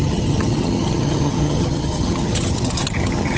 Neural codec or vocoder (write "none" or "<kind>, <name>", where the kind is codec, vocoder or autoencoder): vocoder, HiFi-GAN